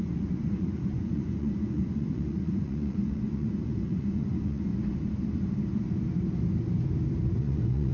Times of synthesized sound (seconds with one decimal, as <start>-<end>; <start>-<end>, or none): 0.0-4.7; 7.4-7.9